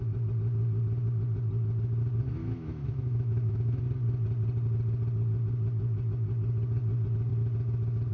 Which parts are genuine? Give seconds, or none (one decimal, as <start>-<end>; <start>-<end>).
0.0-2.4; 3.8-8.1